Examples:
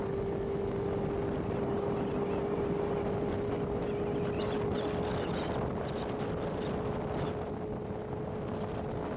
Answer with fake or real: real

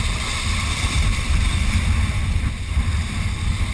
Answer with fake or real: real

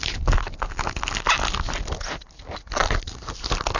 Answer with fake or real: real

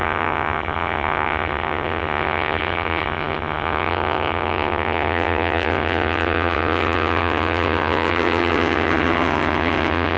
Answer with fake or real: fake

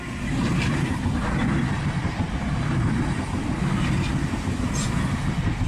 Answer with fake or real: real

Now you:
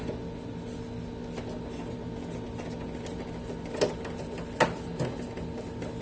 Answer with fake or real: real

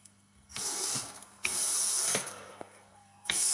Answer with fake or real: fake